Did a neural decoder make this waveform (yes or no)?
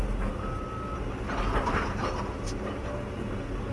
no